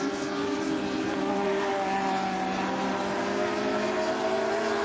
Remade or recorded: recorded